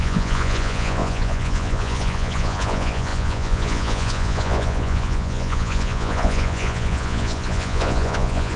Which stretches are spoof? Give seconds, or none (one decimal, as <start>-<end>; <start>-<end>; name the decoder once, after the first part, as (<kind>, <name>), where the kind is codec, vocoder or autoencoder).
0.0-8.6 (vocoder, Vocos)